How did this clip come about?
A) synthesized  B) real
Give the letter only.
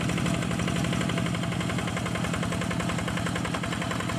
B